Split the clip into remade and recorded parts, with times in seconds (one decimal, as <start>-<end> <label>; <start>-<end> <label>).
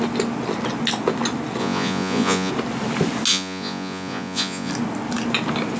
0.0-1.6 recorded; 1.6-2.5 remade; 2.5-3.3 recorded; 3.3-4.7 remade; 4.7-5.8 recorded